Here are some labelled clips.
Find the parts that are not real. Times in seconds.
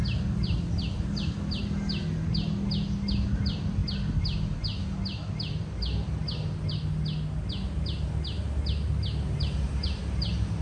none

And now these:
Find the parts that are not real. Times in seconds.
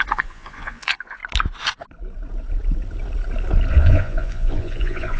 0.0-1.2 (vocoder, Vocos); 3.7-5.2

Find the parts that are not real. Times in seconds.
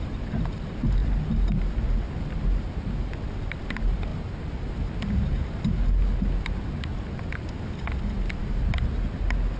none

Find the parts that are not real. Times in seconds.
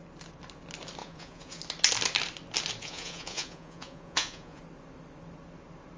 1.0-1.6 (vocoder, Vocos); 2.8-4.6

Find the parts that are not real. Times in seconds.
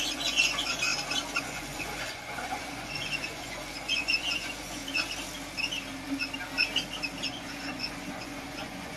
0.0-0.9 (vocoder, Vocos); 1.4-4.8; 7.3-9.0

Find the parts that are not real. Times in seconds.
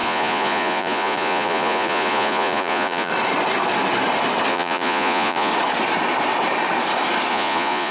0.0-3.1 (vocoder, Vocos); 4.5-5.5; 7.3-7.9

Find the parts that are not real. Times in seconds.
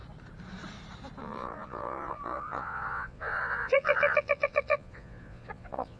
1.2-6.0 (vocoder, Vocos)